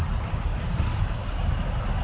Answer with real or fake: real